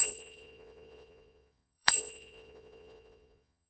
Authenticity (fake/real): fake